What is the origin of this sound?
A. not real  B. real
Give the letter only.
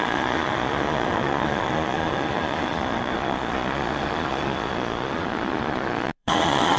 A